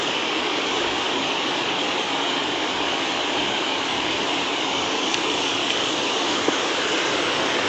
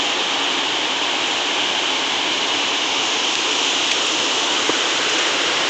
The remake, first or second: first